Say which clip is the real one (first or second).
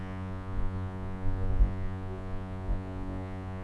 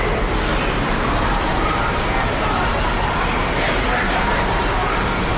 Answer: second